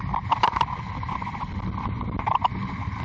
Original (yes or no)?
yes